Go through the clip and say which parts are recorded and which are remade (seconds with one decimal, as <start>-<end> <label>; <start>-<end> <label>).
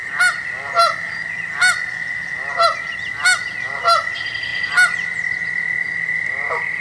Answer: 0.0-6.8 recorded